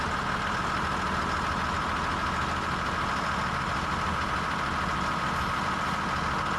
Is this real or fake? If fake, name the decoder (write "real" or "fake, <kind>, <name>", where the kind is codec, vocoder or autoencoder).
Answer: real